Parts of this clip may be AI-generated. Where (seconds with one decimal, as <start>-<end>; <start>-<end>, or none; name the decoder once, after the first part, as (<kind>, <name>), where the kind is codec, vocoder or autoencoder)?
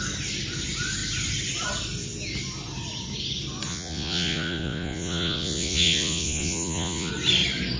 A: 3.7-7.1 (vocoder, Vocos)